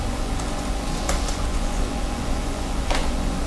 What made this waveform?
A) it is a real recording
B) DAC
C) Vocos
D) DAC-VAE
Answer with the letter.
C